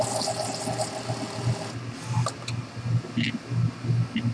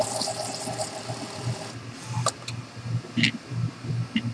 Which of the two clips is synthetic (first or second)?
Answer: second